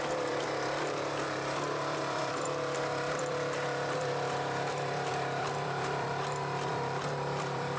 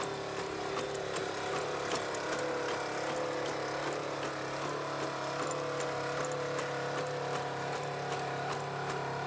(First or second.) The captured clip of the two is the second